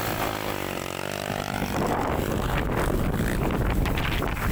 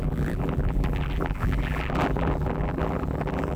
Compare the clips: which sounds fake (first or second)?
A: second